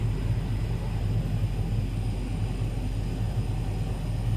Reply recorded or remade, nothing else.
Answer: recorded